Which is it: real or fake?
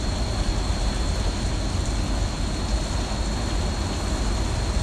real